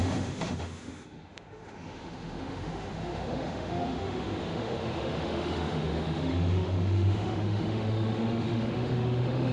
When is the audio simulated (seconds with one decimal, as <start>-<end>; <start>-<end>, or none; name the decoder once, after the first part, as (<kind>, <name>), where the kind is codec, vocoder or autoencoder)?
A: 0.0-9.5 (autoencoder, DAC-VAE)